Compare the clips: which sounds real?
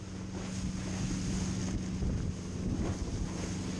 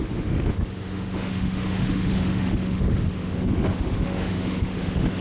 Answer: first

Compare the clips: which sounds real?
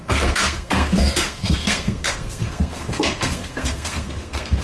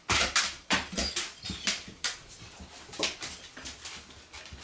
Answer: second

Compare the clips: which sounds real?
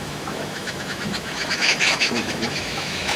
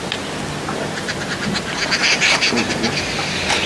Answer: second